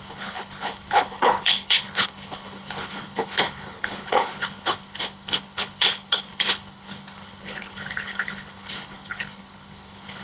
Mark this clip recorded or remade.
remade